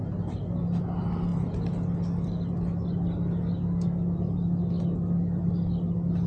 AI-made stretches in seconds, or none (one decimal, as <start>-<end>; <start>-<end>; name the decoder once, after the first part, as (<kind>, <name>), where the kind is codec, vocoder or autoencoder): none